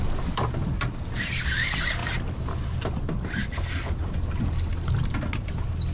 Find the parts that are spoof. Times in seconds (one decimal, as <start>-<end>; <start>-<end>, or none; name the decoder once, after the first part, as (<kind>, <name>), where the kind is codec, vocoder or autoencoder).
none